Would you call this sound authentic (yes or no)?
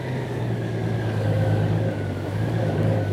no